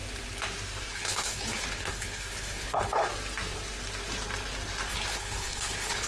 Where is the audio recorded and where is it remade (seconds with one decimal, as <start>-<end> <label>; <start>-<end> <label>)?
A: 0.0-0.9 recorded; 0.9-3.1 remade; 3.1-4.9 recorded; 4.9-6.1 remade